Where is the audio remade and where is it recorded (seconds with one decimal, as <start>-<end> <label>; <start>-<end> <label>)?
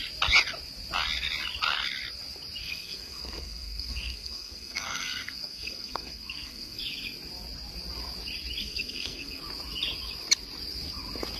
0.0-2.6 recorded; 2.6-6.8 remade; 6.8-8.6 recorded; 8.6-9.4 remade; 9.4-11.4 recorded